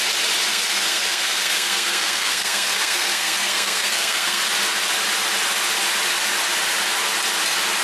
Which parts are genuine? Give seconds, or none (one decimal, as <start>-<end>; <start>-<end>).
0.0-0.5; 4.4-7.8